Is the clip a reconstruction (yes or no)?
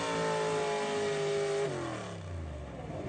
no